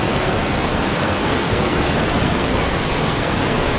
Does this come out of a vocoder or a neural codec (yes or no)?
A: yes